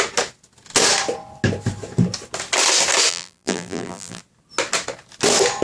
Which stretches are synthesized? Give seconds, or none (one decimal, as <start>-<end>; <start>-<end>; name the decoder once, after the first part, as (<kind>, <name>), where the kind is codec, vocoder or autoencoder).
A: 3.1-4.2 (vocoder, BigVGAN v2)